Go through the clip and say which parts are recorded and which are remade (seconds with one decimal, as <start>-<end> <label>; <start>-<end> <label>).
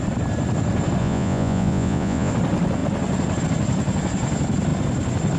0.0-1.0 recorded; 1.0-2.3 remade; 2.3-5.4 recorded